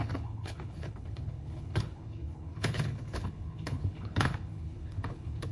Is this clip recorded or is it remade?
remade